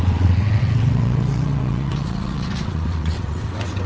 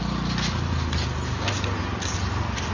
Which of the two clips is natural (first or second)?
second